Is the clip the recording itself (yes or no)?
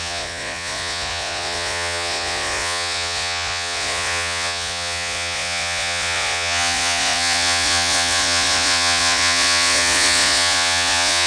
no